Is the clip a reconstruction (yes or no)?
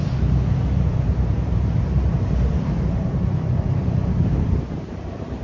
yes